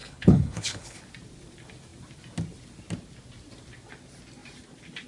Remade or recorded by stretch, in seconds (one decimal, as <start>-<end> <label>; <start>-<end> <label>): 0.0-1.0 remade; 1.0-5.1 recorded